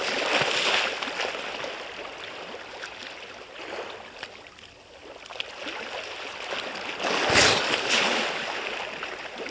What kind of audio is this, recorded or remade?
recorded